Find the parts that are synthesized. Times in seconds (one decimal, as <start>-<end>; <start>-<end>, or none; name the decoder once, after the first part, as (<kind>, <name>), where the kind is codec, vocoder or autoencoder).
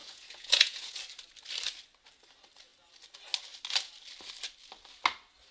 0.0-1.0 (vocoder, Vocos)